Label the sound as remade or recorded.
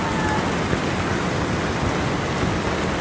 recorded